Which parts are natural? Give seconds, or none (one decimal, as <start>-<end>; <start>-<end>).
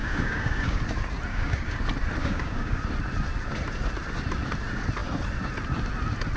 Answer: 0.8-1.3; 1.8-2.2; 2.8-6.4